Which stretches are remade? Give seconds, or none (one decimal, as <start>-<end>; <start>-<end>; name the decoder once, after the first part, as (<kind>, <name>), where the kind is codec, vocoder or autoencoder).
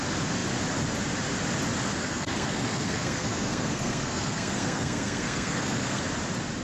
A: 2.0-6.0 (codec, SNAC)